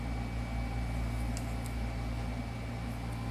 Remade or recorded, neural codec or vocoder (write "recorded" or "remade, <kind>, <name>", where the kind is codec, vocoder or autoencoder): recorded